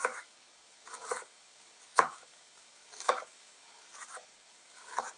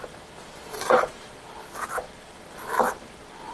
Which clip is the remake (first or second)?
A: first